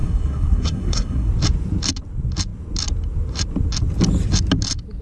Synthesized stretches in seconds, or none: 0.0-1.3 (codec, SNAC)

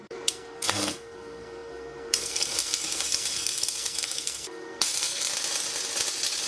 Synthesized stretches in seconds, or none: 0.0-5.3 (codec, SNAC)

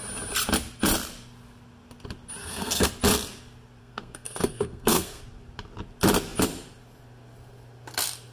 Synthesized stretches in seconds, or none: 2.4-2.9 (codec, SNAC); 3.8-5.2

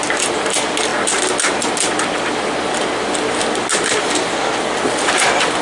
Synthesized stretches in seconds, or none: none

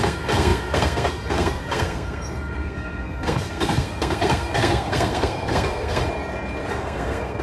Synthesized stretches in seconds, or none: 0.0-6.0 (codec, SNAC); 6.7-7.4

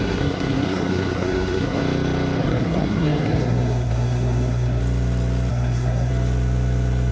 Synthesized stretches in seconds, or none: 0.0-1.8 (codec, SNAC); 2.4-4.8; 5.5-6.1

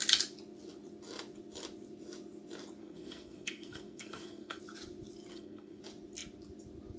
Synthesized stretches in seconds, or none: 2.8-4.6 (codec, SNAC); 5.3-5.8